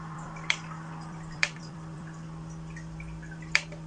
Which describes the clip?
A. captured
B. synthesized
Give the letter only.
B